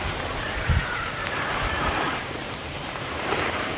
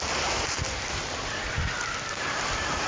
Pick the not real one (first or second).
first